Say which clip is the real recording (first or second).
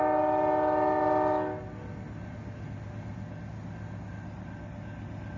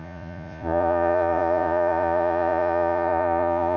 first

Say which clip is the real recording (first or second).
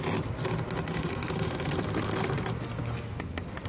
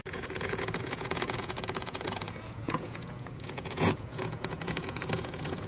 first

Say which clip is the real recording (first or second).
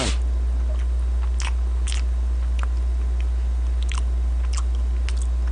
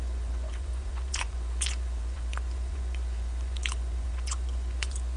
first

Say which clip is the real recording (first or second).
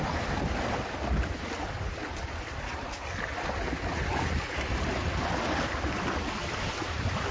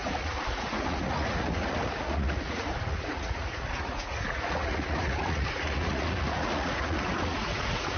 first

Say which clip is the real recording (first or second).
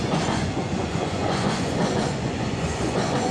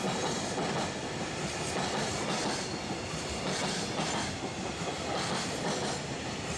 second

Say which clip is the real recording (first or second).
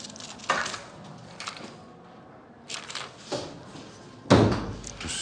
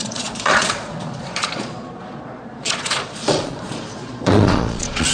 first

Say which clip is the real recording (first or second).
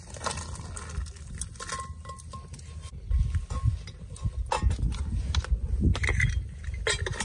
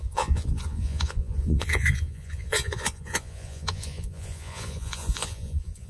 first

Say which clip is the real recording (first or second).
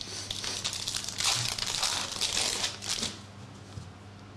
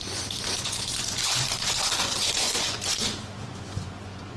first